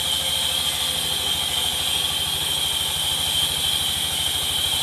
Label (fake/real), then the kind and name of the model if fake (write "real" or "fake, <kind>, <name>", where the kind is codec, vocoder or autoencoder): real